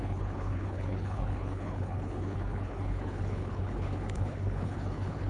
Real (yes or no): no